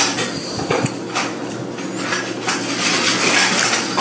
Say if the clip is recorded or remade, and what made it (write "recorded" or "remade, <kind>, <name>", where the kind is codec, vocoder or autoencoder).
recorded